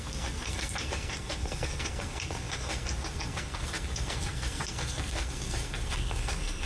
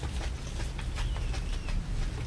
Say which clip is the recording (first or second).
second